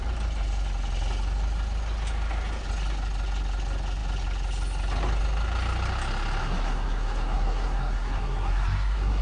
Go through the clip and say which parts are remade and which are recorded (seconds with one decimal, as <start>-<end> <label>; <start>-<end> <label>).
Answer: 0.0-6.4 recorded; 6.4-9.2 remade